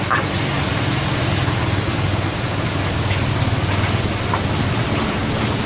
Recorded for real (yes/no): yes